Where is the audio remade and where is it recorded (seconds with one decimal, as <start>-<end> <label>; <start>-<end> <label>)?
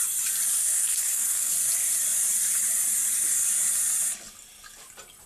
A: 0.0-0.6 recorded; 0.6-1.5 remade; 1.5-5.3 recorded